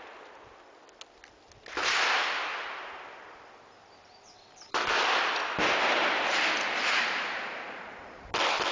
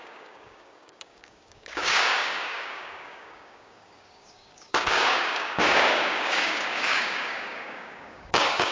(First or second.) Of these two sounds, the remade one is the second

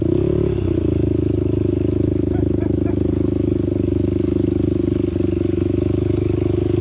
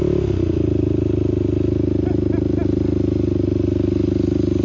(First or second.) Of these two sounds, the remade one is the first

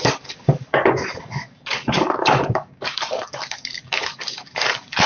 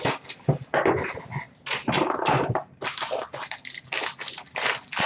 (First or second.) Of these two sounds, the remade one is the first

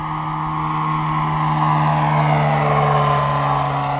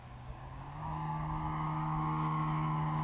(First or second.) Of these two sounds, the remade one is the second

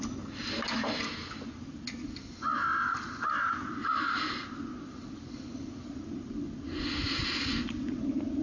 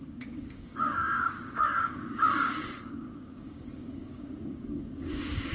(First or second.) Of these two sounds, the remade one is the second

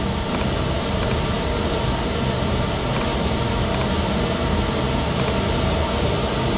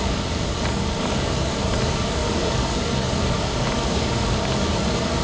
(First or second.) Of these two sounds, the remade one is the second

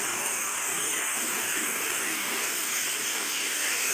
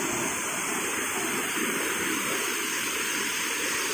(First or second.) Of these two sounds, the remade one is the first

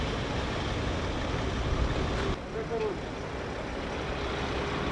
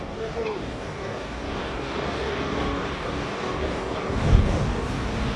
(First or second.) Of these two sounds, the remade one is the second